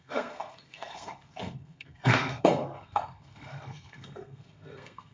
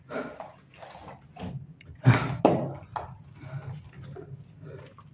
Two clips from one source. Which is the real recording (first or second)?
second